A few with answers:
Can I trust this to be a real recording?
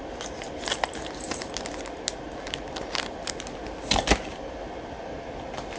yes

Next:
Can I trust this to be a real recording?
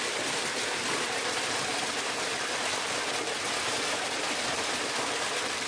yes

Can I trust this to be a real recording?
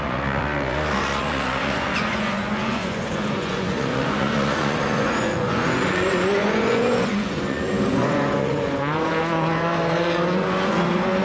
no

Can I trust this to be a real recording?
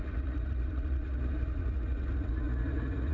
no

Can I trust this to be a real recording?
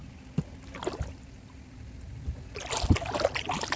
yes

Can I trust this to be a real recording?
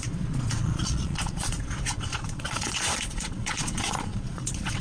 no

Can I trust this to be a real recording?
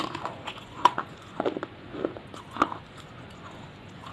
no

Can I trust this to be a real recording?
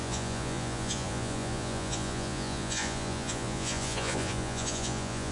no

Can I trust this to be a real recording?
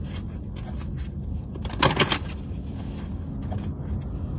yes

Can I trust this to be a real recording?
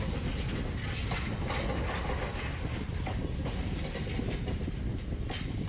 yes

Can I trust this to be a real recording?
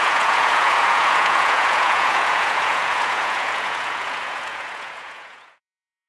no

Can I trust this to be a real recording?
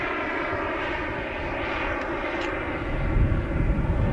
yes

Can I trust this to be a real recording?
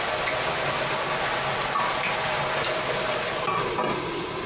yes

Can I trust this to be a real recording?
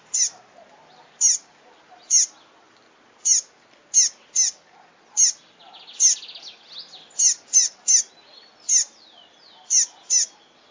yes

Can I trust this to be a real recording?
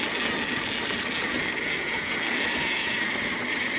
yes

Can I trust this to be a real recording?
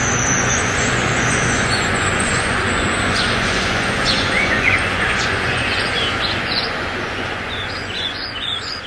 no